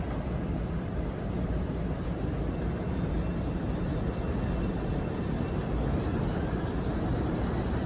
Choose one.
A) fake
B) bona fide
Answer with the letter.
B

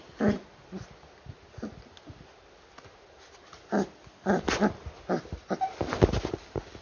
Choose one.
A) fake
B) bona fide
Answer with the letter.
B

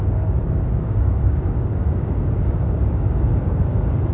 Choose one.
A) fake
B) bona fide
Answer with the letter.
A